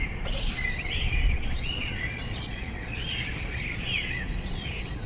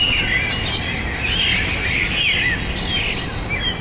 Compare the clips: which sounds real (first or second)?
second